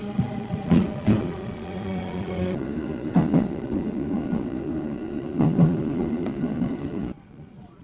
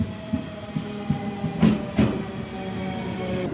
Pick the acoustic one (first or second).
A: second